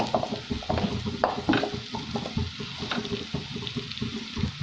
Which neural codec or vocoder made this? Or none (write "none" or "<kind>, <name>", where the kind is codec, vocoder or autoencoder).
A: none